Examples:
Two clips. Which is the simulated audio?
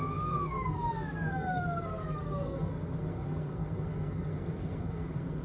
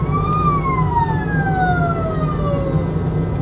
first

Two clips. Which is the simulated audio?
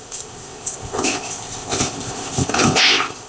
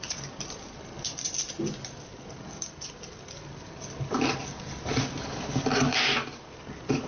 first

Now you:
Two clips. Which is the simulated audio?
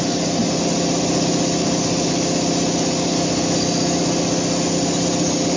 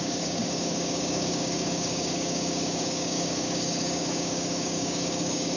second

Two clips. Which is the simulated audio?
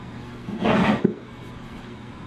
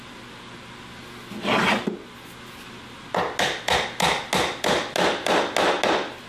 first